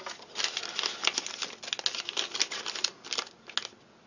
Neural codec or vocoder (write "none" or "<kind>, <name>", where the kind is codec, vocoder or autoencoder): none